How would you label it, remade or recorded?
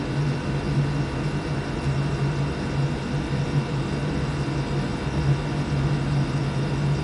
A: recorded